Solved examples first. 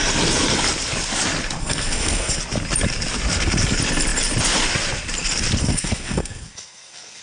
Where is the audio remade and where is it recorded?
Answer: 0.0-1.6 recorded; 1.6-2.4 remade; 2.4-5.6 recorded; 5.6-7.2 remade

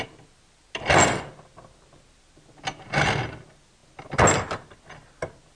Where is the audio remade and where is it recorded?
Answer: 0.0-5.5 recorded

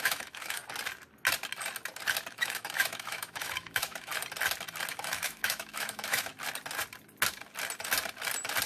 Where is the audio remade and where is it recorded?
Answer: 0.0-0.6 remade; 0.6-2.3 recorded; 2.3-4.1 remade; 4.1-4.9 recorded; 4.9-6.3 remade; 6.3-8.7 recorded